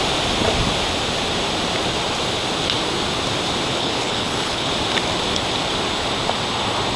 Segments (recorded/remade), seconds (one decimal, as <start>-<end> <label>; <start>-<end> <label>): 0.0-3.7 recorded; 3.7-4.7 remade; 4.7-7.0 recorded